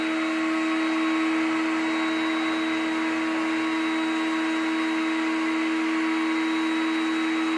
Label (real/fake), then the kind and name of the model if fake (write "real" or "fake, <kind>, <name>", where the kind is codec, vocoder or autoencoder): real